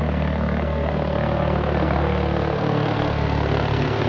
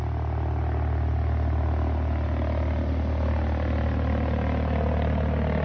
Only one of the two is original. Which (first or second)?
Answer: second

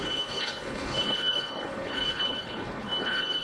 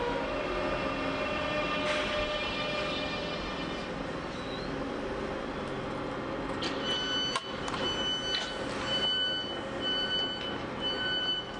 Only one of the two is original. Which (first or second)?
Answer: second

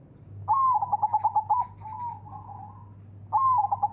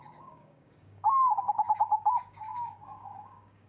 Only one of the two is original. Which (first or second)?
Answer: first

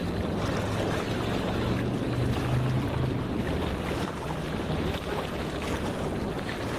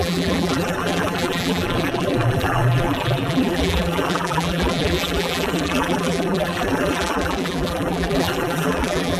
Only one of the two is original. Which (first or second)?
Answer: first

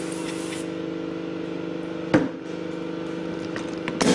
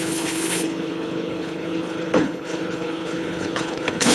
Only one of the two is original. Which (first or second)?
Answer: first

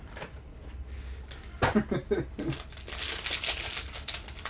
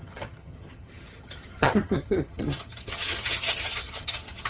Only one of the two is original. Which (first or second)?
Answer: first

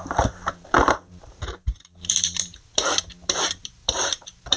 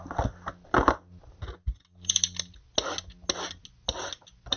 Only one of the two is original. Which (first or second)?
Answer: second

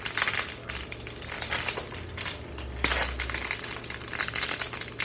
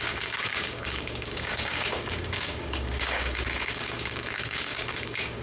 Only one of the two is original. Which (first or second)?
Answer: first